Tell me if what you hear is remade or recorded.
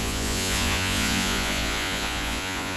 remade